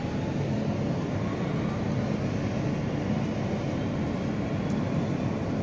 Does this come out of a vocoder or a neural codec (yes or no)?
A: no